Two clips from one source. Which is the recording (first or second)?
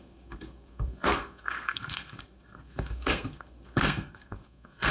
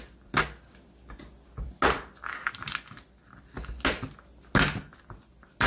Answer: second